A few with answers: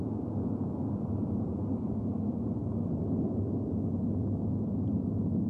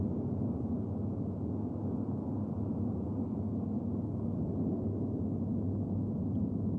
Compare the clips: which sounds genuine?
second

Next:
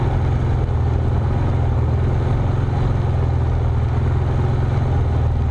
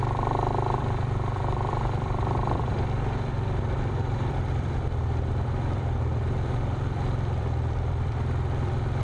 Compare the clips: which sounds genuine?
first